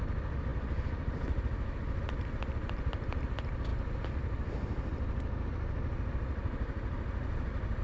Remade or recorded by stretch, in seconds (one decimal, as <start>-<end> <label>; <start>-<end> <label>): 0.0-7.8 recorded